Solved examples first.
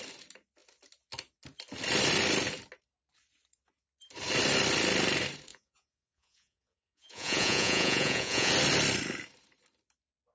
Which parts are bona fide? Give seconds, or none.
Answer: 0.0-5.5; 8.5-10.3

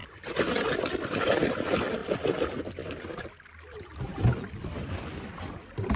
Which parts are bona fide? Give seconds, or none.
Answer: 0.0-6.0